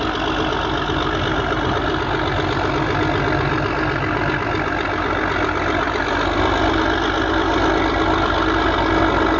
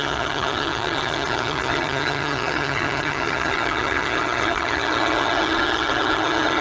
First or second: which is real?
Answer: first